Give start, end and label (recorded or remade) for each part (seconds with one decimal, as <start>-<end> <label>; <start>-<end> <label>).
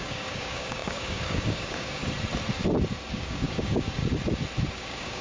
0.0-2.0 remade; 2.0-3.1 recorded; 3.1-4.0 remade; 4.0-4.7 recorded; 4.7-5.2 remade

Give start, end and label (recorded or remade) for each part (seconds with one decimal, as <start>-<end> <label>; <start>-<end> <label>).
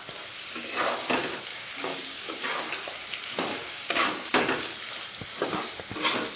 0.0-1.5 recorded; 1.5-2.6 remade; 2.6-3.5 recorded; 3.5-4.4 remade; 4.4-6.4 recorded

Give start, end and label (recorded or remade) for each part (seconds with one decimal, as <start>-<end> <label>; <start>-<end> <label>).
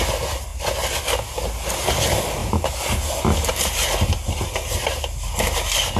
0.0-6.0 recorded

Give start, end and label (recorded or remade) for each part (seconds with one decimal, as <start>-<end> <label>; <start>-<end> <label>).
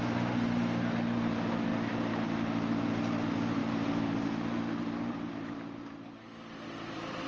0.0-7.3 recorded